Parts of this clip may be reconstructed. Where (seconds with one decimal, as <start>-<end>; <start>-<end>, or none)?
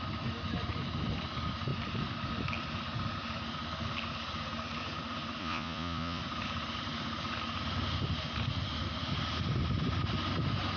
5.4-6.2